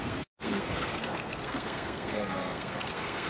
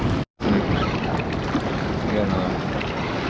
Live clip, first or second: second